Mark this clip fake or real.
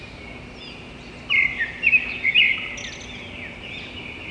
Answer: real